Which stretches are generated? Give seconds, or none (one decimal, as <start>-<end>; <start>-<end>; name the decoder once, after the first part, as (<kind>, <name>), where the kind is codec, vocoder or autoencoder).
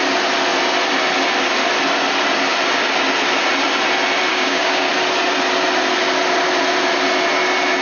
4.3-4.9 (codec, DAC)